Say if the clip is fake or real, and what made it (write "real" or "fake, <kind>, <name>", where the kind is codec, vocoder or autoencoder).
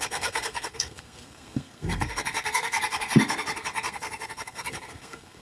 fake, codec, SNAC